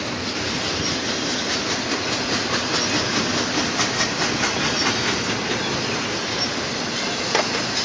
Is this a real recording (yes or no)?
yes